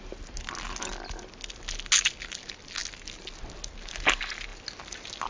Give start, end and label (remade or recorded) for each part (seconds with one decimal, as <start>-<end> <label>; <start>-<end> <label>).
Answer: 0.0-5.3 recorded